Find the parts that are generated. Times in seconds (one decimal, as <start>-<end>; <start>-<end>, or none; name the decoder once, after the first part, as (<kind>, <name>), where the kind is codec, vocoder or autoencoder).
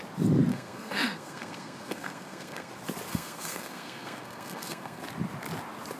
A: 0.5-2.7 (codec, SNAC); 3.1-5.0